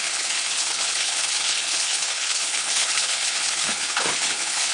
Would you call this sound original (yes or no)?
no